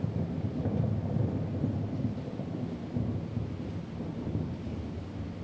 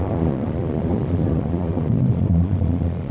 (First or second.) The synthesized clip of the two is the second